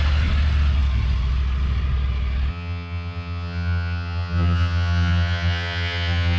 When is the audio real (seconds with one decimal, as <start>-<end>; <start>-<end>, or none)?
0.0-2.5